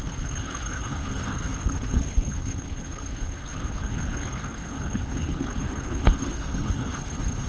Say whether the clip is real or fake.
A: fake